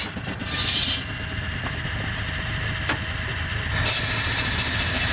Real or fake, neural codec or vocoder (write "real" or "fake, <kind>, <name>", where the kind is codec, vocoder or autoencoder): real